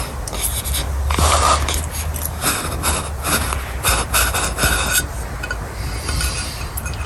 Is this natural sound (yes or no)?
yes